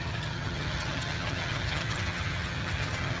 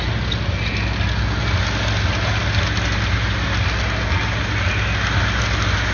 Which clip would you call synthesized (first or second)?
first